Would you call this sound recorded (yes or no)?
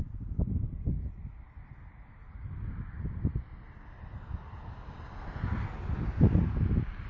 yes